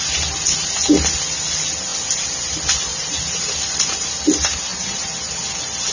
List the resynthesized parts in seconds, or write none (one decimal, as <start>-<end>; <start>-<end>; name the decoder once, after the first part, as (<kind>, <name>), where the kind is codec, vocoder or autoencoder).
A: 2.9-3.5 (vocoder, BigVGAN v2); 4.7-5.3